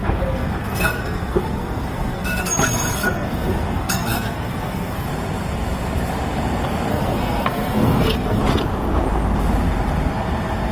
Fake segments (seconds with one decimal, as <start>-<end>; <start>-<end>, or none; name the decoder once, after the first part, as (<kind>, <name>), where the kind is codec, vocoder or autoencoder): 0.0-5.1 (codec, SNAC); 6.9-8.4